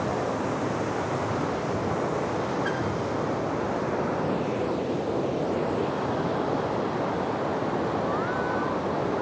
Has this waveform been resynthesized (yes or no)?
no